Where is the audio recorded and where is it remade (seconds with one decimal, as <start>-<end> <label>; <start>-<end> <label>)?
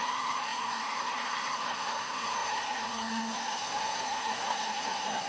0.0-5.3 remade